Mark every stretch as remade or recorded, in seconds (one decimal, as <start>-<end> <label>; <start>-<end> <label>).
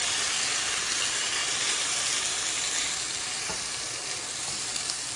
0.0-5.2 recorded